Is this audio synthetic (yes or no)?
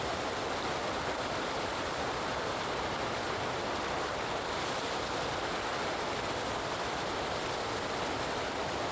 no